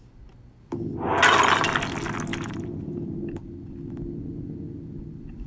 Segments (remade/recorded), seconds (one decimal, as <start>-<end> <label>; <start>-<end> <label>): 0.0-2.3 recorded; 2.3-3.5 remade; 3.5-5.5 recorded